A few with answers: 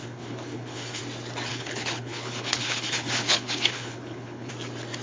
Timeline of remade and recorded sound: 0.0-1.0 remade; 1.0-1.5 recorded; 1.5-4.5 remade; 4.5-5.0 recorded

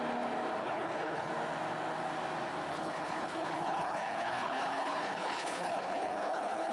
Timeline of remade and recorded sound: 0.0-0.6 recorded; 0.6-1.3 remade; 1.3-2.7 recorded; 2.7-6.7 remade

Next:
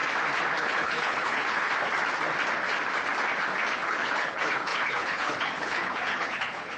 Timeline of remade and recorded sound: 0.0-0.6 recorded; 0.6-1.7 remade; 1.7-3.9 recorded; 3.9-6.8 remade